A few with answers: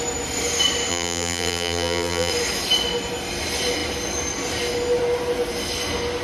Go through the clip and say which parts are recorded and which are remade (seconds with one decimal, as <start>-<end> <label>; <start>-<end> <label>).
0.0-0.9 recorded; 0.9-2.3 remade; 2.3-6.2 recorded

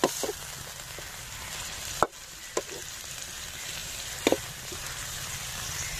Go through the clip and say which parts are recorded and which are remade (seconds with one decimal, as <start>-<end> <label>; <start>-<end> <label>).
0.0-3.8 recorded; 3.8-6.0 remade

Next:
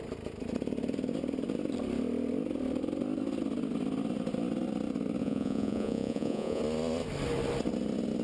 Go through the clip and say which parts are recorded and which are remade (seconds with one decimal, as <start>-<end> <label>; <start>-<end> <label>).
0.0-5.2 recorded; 5.2-6.6 remade; 6.6-8.2 recorded

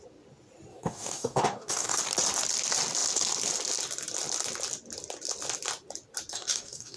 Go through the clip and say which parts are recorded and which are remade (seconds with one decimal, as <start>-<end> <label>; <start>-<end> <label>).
0.0-0.7 recorded; 0.7-2.0 remade; 2.0-6.3 recorded; 6.3-7.0 remade

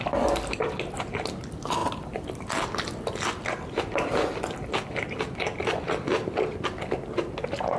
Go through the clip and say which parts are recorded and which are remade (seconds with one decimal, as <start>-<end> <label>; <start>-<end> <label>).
0.0-7.8 recorded

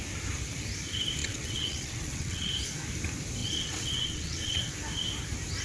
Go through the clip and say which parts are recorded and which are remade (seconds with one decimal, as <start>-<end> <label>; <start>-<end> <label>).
0.0-1.2 recorded; 1.2-2.5 remade; 2.5-3.4 recorded; 3.4-4.7 remade; 4.7-5.6 recorded

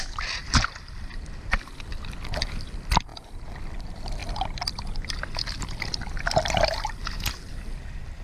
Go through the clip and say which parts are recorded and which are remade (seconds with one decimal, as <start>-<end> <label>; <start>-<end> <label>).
0.0-8.2 recorded